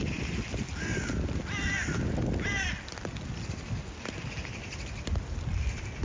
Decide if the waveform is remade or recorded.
recorded